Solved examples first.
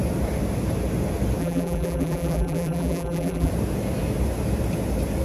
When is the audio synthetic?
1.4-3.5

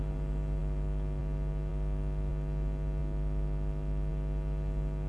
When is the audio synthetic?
0.6-1.2; 1.7-2.3; 3.0-4.1

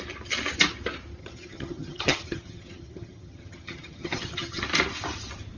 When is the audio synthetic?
1.2-4.6

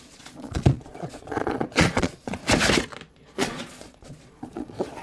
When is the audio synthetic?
0.0-2.4; 3.1-5.0

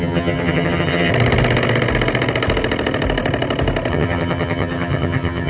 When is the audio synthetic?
0.0-1.1; 3.9-5.5